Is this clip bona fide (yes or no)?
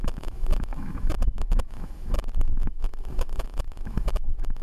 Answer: no